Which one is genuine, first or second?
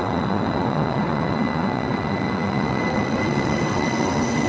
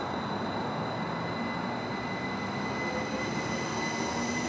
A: second